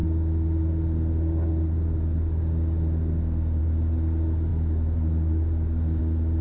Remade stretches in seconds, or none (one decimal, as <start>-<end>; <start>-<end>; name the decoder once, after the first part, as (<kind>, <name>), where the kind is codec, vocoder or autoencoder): none